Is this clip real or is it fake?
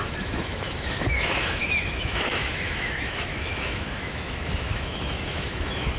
fake